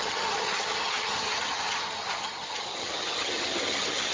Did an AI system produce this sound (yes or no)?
yes